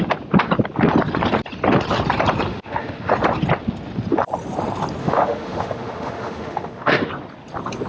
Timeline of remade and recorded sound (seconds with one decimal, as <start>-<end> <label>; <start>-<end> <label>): 0.0-2.5 recorded; 2.5-3.1 remade; 3.1-5.0 recorded; 5.0-7.1 remade; 7.1-7.9 recorded